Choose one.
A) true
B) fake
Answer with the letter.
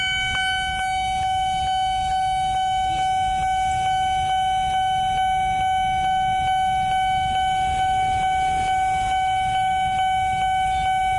A